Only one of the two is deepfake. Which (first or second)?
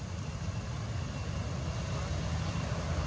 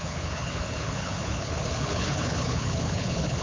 second